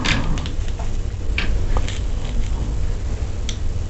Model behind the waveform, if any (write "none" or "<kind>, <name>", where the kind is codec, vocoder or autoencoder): none